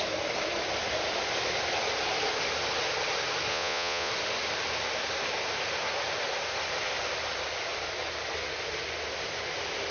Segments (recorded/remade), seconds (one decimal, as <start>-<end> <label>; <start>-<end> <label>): 0.0-3.5 recorded; 3.5-4.1 remade; 4.1-9.9 recorded